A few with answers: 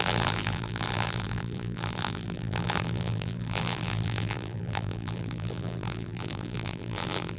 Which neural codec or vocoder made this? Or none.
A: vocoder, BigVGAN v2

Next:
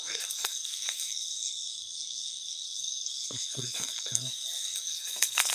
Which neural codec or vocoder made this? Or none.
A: codec, SNAC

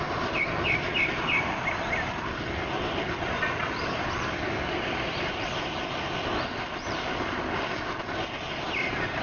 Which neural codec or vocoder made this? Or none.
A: vocoder, BigVGAN v2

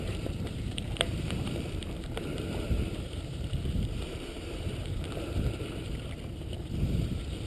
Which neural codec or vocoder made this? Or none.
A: vocoder, BigVGAN v2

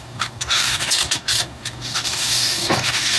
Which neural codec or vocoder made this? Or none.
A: codec, DAC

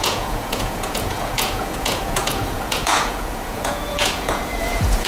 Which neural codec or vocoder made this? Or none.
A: vocoder, Vocos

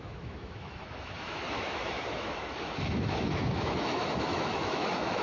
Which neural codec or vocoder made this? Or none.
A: autoencoder, DAC-VAE